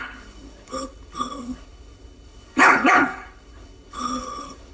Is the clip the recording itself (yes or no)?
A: no